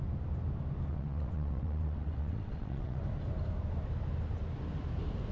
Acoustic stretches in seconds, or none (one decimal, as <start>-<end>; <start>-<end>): 0.0-0.9; 3.0-5.3